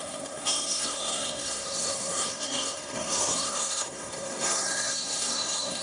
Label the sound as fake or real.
fake